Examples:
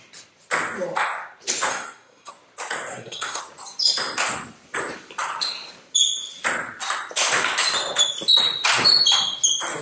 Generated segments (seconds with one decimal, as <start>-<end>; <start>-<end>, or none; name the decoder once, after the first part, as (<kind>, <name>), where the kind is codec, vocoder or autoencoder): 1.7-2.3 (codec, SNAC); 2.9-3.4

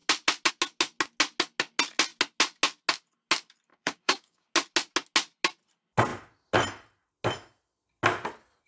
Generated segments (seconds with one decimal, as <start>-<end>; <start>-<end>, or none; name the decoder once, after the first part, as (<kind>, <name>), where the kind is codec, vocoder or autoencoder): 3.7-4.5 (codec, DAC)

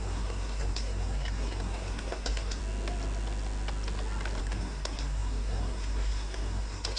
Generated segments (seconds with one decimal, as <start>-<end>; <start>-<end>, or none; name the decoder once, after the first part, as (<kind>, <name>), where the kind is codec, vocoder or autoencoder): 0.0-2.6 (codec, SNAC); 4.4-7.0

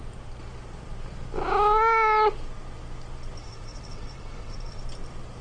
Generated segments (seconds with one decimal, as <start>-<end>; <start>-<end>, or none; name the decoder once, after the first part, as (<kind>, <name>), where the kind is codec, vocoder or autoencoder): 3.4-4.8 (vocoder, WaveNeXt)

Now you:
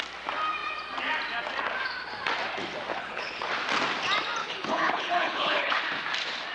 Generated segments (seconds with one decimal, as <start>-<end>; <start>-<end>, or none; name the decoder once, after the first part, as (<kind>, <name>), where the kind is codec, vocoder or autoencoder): 2.9-3.5 (codec, HILCodec); 4.4-5.8